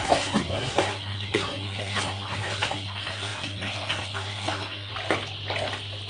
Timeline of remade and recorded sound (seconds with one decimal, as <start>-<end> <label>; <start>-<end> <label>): 0.0-4.9 remade; 4.9-6.1 recorded